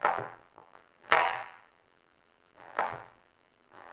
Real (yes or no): no